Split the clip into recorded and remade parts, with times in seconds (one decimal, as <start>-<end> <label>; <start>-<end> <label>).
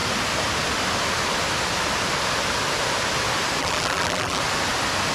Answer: 0.0-3.6 recorded; 3.6-4.4 remade; 4.4-5.1 recorded